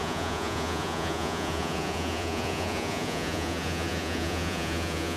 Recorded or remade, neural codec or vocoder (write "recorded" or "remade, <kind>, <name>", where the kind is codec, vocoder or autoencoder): remade, vocoder, Vocos